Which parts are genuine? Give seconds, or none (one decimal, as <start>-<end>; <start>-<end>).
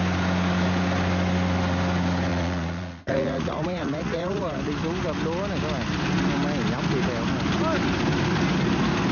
0.0-2.3; 4.6-9.1